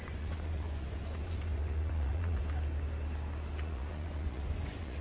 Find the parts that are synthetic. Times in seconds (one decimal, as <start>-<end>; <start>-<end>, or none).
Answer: 0.0-2.4; 3.6-5.0